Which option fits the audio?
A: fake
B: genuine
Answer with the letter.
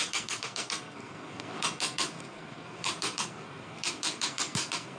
A